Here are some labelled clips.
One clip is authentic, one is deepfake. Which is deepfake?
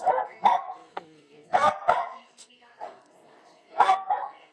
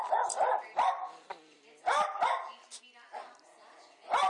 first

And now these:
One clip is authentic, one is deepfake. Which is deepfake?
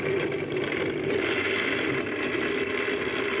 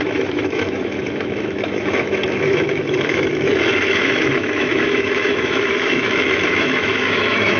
second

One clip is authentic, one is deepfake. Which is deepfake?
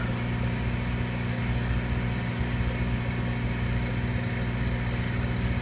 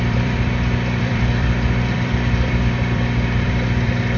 second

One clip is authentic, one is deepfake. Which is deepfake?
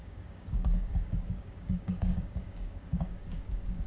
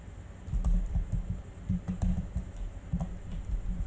first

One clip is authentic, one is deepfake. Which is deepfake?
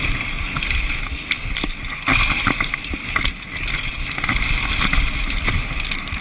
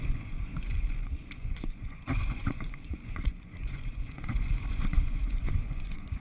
second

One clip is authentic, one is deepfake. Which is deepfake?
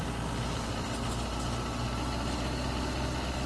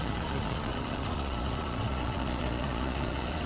second